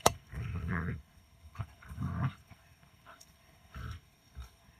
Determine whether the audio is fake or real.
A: fake